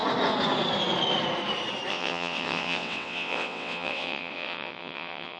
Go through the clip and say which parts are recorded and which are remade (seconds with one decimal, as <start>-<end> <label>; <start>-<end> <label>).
0.0-1.9 recorded; 1.9-5.4 remade